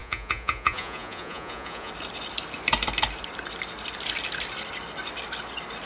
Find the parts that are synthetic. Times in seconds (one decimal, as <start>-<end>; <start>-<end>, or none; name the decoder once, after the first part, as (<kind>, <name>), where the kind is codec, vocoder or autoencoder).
0.0-1.9 (vocoder, Vocos)